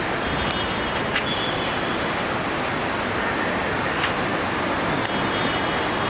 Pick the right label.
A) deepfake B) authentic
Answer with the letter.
B